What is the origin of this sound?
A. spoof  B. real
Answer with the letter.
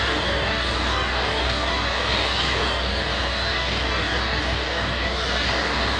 A